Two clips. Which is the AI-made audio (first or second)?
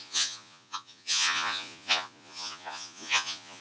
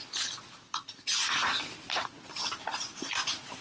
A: first